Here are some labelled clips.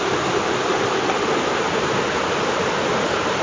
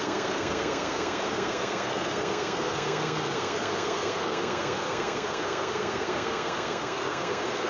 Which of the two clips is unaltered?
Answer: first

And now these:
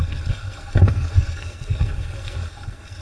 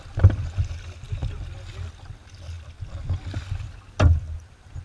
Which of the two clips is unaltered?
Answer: second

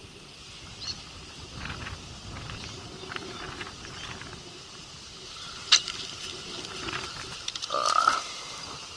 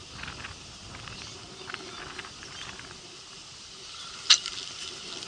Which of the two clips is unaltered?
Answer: second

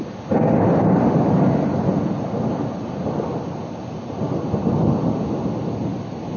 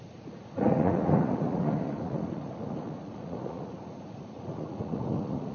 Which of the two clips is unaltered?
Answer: first